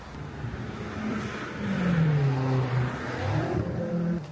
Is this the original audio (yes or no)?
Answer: yes